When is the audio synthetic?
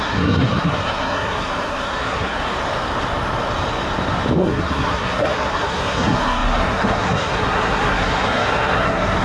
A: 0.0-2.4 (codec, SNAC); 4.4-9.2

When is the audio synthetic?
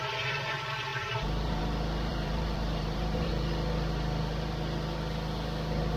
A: 0.9-1.6 (vocoder, BigVGAN v2); 2.1-3.3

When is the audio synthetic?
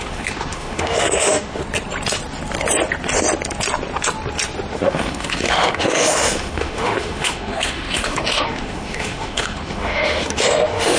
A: 0.0-1.6 (autoencoder, DAC-VAE); 4.7-11.0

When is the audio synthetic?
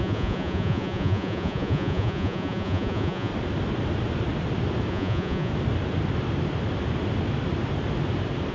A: 0.0-3.3 (vocoder, Vocos); 4.9-5.5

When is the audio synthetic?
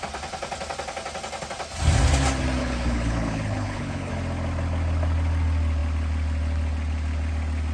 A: 2.6-4.1 (codec, HILCodec)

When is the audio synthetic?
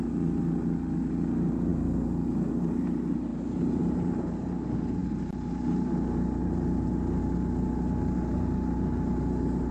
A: none